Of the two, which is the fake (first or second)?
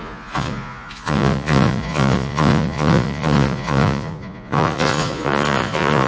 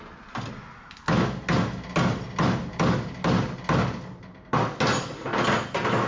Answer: first